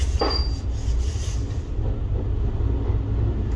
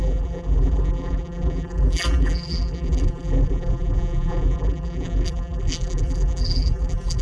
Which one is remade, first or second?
second